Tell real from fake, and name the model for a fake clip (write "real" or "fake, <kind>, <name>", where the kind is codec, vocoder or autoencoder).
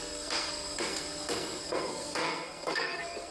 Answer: fake, codec, SNAC